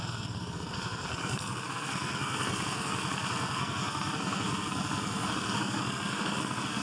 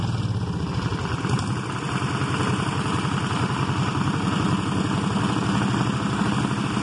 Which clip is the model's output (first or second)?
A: first